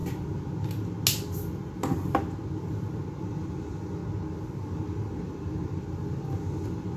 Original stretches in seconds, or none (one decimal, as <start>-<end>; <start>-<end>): 0.0-3.2; 4.0-4.6